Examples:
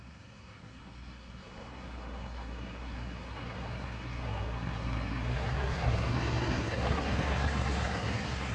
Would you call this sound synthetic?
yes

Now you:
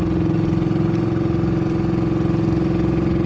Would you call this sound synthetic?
no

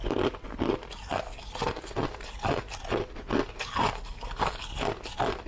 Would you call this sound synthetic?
no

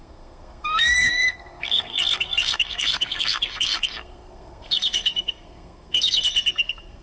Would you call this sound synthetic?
yes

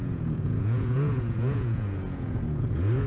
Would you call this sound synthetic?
yes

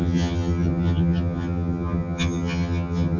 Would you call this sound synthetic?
yes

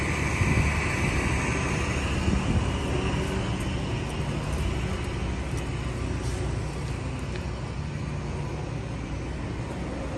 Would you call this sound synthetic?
no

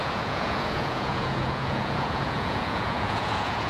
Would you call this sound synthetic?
yes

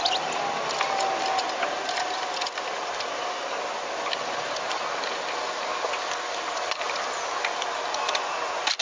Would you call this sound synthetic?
no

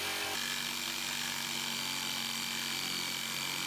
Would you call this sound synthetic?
no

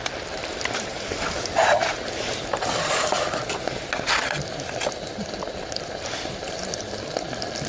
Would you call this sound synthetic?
no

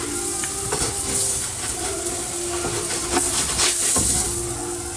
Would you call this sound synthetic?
no